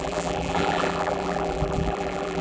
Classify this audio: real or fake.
fake